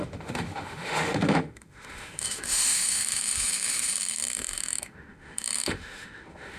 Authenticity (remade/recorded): remade